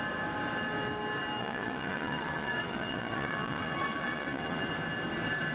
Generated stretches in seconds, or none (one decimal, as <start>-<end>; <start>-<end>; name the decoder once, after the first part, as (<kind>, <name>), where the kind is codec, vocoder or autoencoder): 1.4-4.7 (vocoder, Vocos)